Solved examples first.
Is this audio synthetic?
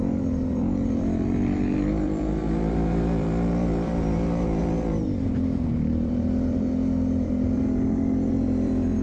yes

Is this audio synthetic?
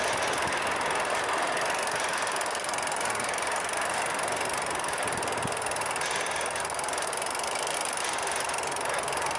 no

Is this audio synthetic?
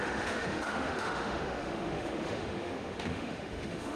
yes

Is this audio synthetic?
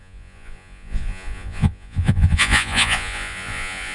yes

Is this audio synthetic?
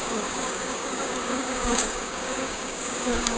yes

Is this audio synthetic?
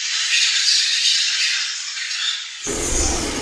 yes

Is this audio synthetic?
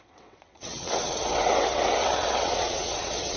yes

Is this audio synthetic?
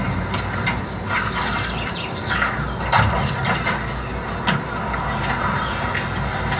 no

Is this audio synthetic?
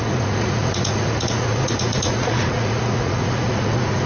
yes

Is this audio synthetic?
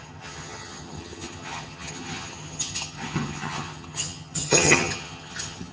yes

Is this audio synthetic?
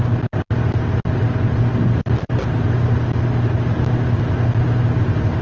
no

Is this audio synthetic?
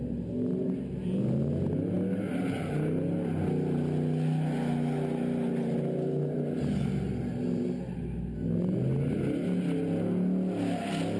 no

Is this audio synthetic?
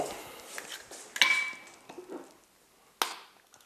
no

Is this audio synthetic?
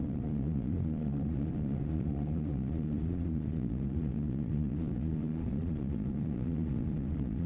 yes